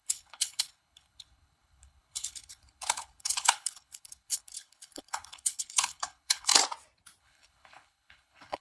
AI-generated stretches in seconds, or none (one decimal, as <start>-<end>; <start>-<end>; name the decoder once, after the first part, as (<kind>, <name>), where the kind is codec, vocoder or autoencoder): 0.0-6.5 (codec, HILCodec); 7.2-8.6